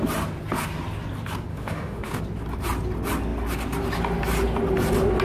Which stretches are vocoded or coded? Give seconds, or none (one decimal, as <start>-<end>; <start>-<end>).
1.5-2.2

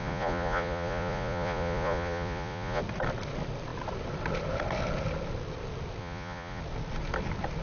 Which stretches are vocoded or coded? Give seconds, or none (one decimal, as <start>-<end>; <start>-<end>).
0.0-2.8; 6.0-6.6

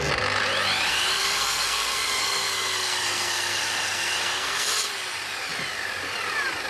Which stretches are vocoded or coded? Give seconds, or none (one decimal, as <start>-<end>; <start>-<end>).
0.9-4.9

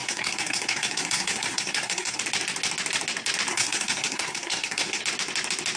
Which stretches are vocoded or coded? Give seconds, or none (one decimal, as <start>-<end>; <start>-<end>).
0.0-2.2; 3.5-5.0

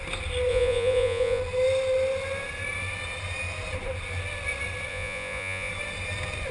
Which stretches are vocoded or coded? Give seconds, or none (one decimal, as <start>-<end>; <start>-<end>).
0.5-1.4; 4.9-5.7

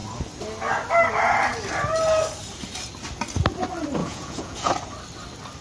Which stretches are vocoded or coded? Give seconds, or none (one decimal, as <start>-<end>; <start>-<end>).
4.0-4.7

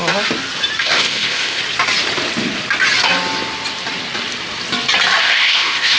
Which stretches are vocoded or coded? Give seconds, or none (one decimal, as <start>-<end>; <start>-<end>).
0.8-1.6; 5.2-6.0

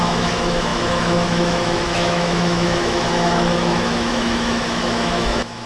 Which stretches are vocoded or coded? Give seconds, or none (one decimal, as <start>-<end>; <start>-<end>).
0.0-5.7